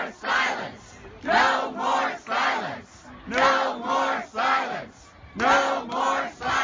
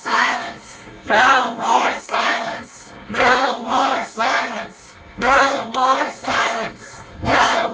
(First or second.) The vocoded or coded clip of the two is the second